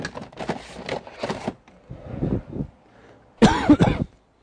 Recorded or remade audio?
recorded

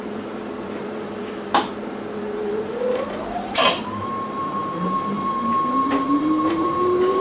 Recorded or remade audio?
remade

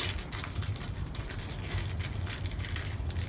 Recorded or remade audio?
recorded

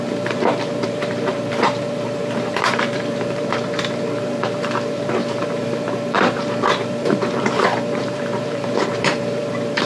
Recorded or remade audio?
remade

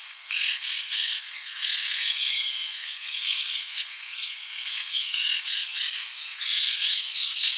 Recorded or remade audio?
remade